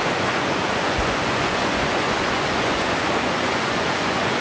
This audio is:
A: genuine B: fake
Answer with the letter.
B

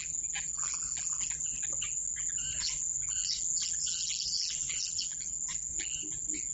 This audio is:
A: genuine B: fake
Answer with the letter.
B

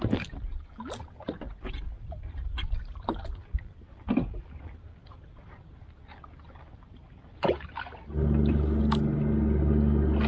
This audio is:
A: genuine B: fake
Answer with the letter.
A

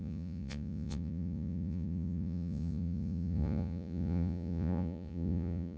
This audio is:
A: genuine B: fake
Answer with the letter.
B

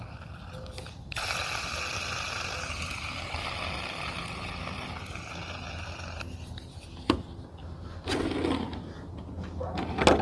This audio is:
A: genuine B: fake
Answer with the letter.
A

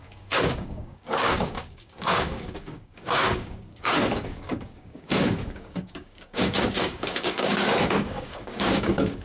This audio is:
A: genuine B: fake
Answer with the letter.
B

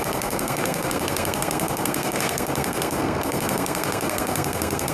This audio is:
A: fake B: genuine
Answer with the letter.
A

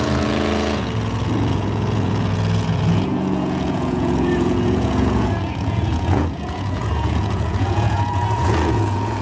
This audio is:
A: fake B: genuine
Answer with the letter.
A